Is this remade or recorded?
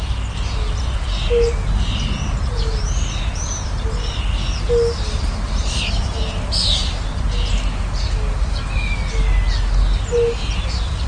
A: recorded